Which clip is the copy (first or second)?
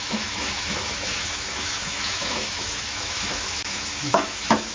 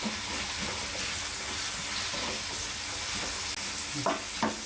first